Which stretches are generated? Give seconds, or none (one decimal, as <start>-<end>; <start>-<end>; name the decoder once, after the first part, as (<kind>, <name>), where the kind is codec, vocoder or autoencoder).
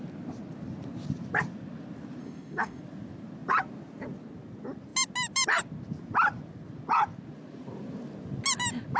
2.2-2.8 (codec, SNAC)